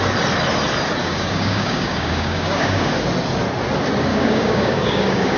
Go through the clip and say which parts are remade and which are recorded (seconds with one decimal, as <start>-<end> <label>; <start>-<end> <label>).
0.0-1.0 recorded; 1.0-2.9 remade; 2.9-4.1 recorded; 4.1-5.4 remade